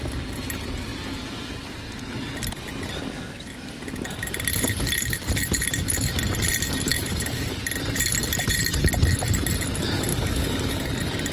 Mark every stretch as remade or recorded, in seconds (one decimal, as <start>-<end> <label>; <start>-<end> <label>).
0.0-6.9 recorded; 6.9-7.6 remade; 7.6-10.1 recorded; 10.1-10.9 remade; 10.9-11.3 recorded